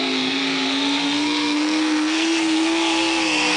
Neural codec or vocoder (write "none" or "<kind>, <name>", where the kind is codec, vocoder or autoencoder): codec, SNAC